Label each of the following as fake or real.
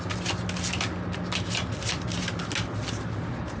real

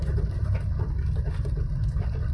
real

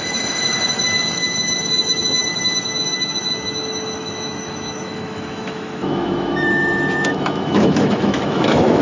fake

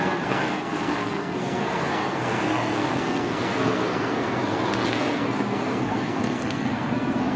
fake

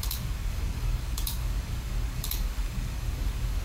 fake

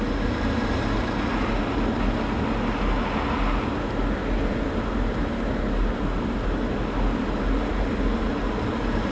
real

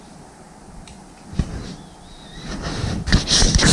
real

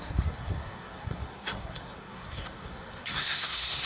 fake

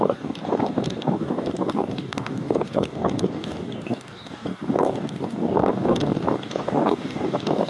fake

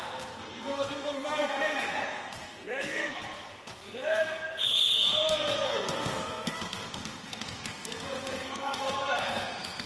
fake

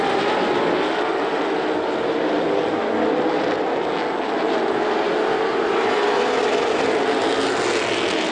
real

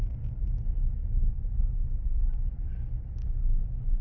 real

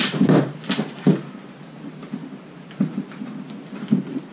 real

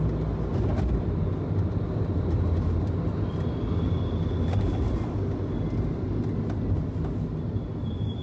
real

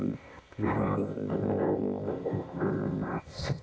fake